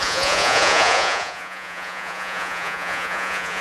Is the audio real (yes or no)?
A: no